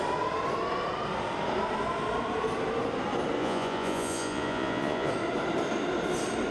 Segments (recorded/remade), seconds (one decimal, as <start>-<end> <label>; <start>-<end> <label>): 0.0-3.4 recorded; 3.4-5.1 remade; 5.1-6.5 recorded